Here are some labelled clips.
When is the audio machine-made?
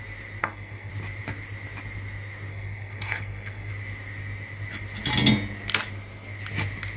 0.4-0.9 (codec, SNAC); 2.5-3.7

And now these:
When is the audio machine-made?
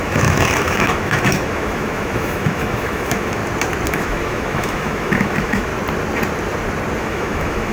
0.0-3.4 (autoencoder, DAC-VAE); 3.9-5.7; 7.0-7.7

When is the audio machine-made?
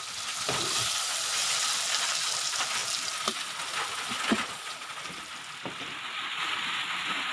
4.3-5.0 (vocoder, Vocos)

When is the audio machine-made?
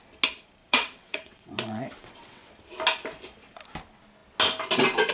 0.6-2.5 (vocoder, WaveNeXt)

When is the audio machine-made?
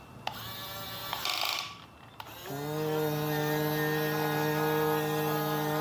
1.0-1.6 (vocoder, BigVGAN v2)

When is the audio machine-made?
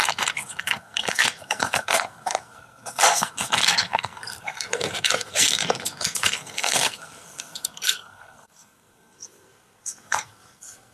0.0-10.9 (codec, SNAC)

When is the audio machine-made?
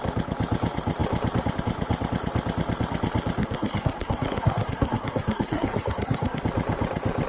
3.4-6.4 (codec, SNAC)